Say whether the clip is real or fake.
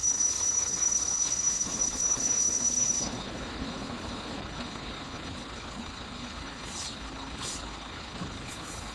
fake